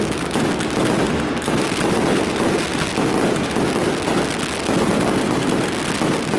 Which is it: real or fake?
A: real